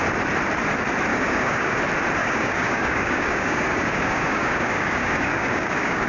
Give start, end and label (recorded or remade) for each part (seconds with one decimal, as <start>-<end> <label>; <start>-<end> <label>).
0.0-1.1 recorded; 1.1-1.8 remade; 1.8-2.2 recorded; 2.2-6.1 remade